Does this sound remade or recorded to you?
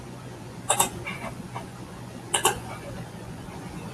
remade